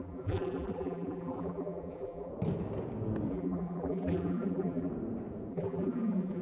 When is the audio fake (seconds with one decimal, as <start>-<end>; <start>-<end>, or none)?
0.0-2.3; 3.3-4.9; 5.5-6.4